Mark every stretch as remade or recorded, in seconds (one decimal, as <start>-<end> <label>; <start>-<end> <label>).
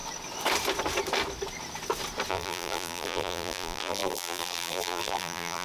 0.0-2.3 recorded; 2.3-5.6 remade